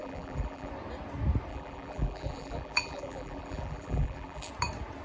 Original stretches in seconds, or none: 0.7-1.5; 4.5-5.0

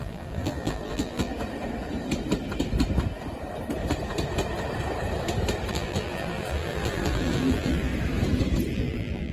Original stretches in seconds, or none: 1.3-5.7; 7.9-8.7